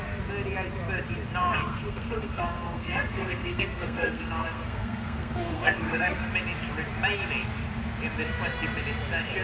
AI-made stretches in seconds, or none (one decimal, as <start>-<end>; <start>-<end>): 1.4-6.3